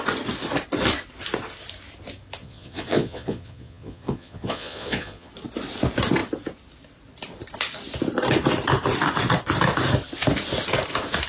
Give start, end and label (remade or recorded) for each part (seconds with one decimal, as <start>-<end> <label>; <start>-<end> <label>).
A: 0.0-2.4 recorded; 2.4-5.3 remade; 5.3-11.3 recorded